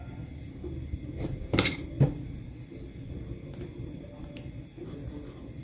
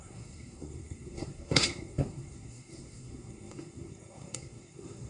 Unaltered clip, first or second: first